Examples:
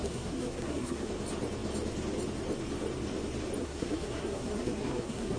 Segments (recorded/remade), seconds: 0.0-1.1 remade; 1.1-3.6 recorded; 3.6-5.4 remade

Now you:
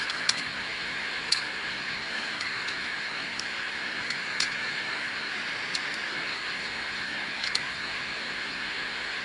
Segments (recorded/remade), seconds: 0.0-5.3 remade; 5.3-6.1 recorded; 6.1-9.2 remade

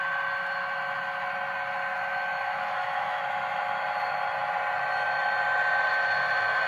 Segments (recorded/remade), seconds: 0.0-1.9 recorded; 1.9-3.2 remade; 3.2-6.7 recorded

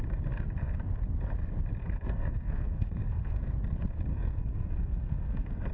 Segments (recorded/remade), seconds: 0.0-1.8 recorded; 1.8-3.5 remade; 3.5-4.1 recorded; 4.1-5.7 remade

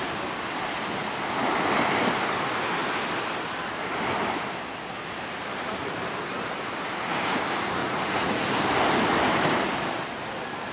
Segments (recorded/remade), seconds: 0.0-7.8 recorded; 7.8-8.4 remade; 8.4-10.7 recorded

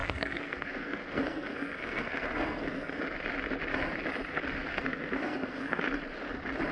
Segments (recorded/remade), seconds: 0.0-3.0 remade; 3.0-4.7 recorded; 4.7-5.8 remade; 5.8-6.7 recorded

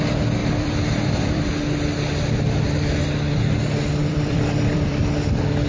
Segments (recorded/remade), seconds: 0.0-0.4 recorded; 0.4-1.4 remade; 1.4-4.0 recorded; 4.0-5.0 remade; 5.0-5.7 recorded